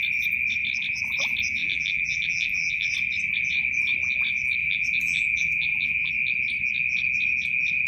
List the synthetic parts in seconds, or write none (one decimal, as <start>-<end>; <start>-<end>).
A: 1.6-2.9; 4.6-6.1